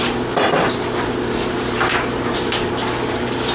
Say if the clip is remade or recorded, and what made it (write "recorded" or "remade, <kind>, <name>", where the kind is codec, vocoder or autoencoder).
recorded